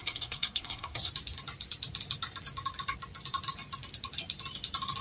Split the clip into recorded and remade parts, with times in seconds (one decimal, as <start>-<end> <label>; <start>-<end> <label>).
0.0-1.1 remade; 1.1-5.0 recorded